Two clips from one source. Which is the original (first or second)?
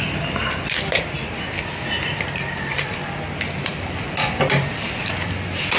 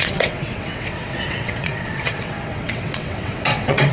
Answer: first